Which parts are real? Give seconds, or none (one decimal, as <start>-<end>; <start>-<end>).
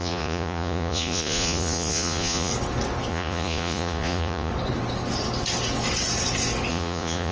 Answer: 2.5-3.1; 4.5-6.7